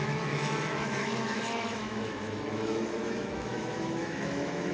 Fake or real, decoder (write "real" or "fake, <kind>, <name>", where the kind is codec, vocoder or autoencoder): fake, autoencoder, DAC-VAE